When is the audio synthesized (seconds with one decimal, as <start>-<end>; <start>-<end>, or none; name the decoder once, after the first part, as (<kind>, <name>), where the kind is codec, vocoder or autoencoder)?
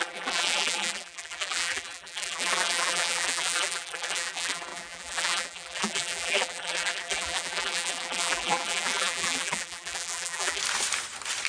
0.0-10.6 (vocoder, BigVGAN v2)